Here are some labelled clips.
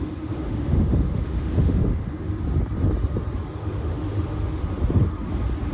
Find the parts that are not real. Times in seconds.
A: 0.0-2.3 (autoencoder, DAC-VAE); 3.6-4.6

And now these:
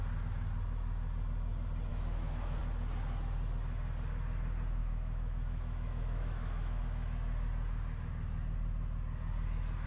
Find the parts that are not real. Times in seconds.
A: 1.9-2.6 (autoencoder, DAC-VAE); 4.8-6.8

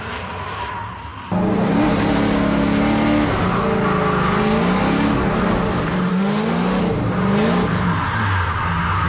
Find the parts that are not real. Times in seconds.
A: 6.1-6.8 (autoencoder, DAC-VAE)

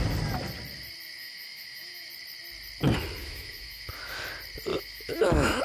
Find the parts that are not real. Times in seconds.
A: 1.2-2.1 (autoencoder, DAC-VAE); 3.2-4.2; 4.7-5.6

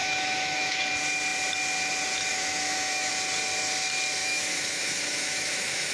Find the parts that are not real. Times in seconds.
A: 0.0-0.8 (autoencoder, DAC-VAE); 2.3-3.1; 4.2-5.9

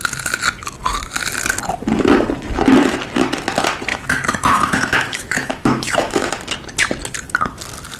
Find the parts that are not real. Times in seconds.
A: 3.9-6.3 (autoencoder, DAC-VAE)